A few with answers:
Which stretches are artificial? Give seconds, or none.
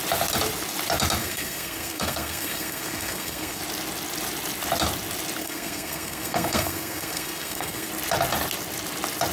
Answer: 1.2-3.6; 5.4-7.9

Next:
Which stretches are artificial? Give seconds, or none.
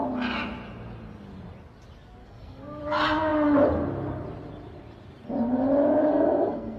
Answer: 2.2-2.8; 6.1-6.8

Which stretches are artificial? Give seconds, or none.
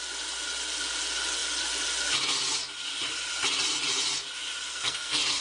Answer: 4.7-5.4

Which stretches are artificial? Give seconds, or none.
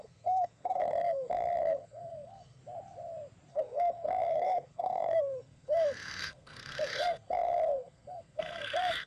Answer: 0.0-2.6; 3.5-9.1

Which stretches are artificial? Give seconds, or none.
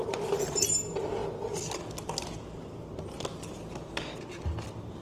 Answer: none